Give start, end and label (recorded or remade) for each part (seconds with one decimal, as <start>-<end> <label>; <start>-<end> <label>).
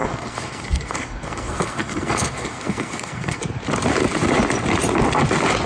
0.0-3.4 remade; 3.4-5.7 recorded